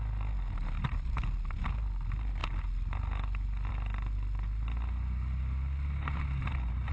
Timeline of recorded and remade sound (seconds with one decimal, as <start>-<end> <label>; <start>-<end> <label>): 0.0-6.9 recorded